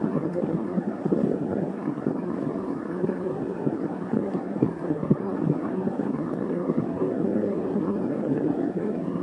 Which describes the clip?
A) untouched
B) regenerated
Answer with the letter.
B